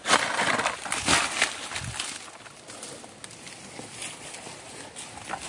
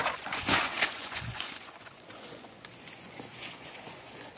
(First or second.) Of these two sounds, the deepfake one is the second